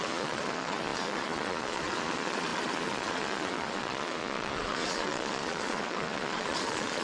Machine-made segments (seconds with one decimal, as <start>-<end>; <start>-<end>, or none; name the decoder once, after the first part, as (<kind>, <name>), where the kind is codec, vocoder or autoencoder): 0.0-7.0 (vocoder, Vocos)